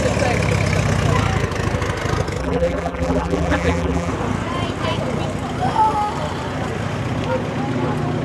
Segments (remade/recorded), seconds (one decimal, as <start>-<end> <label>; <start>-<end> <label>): 0.0-2.4 recorded; 2.4-4.1 remade; 4.1-8.2 recorded